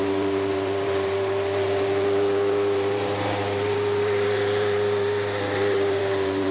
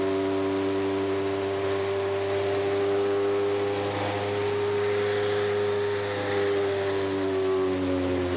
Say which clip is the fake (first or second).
first